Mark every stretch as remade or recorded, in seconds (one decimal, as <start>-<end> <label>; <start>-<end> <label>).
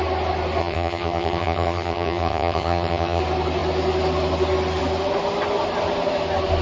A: 0.0-0.6 recorded; 0.6-3.2 remade; 3.2-6.6 recorded